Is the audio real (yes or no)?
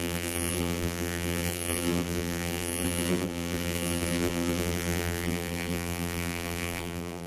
no